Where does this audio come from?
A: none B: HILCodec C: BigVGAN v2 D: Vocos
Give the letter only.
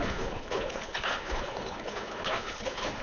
B